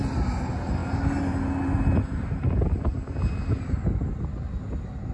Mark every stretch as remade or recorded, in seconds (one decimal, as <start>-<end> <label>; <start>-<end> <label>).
0.0-5.1 recorded